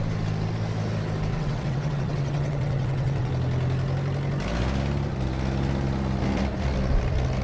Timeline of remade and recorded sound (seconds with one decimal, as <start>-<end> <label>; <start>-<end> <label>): 0.0-1.3 recorded; 1.3-3.3 remade; 3.3-7.4 recorded